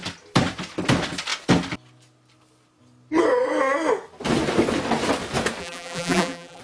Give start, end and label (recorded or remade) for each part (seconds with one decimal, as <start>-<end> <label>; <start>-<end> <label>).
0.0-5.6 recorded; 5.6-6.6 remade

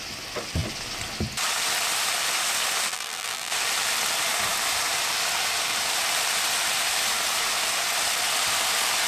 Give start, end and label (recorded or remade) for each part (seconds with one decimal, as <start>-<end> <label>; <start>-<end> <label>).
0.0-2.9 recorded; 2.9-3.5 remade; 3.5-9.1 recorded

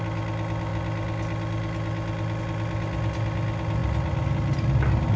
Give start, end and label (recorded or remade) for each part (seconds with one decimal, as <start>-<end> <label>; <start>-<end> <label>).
0.0-5.2 recorded

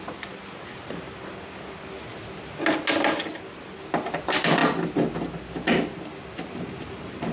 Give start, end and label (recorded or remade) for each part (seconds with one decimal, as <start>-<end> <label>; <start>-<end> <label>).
0.0-7.3 recorded